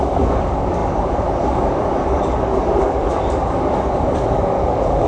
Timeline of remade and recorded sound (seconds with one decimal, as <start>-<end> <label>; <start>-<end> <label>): 0.0-5.1 remade